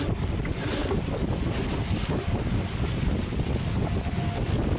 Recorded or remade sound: recorded